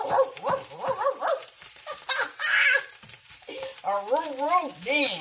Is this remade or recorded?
remade